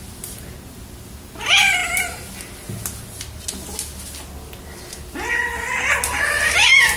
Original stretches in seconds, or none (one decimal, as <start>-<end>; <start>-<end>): 0.0-7.0